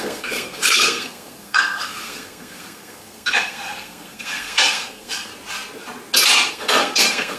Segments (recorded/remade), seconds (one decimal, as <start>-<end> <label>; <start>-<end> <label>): 0.0-5.3 remade; 5.3-6.5 recorded; 6.5-7.4 remade